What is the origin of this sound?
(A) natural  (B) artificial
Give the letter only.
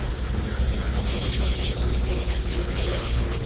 B